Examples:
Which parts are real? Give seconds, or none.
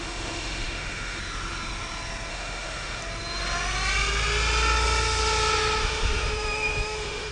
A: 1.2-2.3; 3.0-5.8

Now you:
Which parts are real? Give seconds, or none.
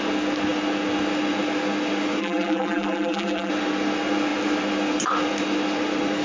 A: 0.0-2.2; 3.5-6.2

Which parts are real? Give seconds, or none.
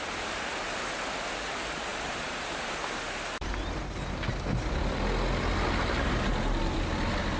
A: 0.0-1.9; 3.6-7.4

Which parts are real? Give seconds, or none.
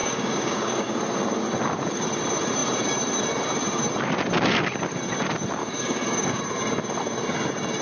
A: 1.0-5.6; 6.4-7.8